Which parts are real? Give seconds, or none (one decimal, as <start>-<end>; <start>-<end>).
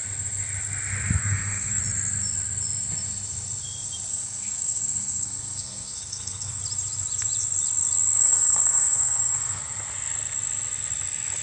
0.0-1.2; 1.8-4.1; 6.6-8.2; 9.6-11.4